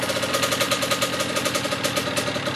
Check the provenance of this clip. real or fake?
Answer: real